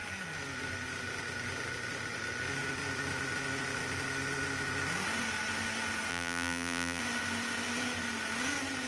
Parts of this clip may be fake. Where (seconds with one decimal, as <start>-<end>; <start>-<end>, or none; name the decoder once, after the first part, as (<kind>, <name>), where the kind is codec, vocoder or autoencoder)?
6.1-7.0 (vocoder, BigVGAN v2)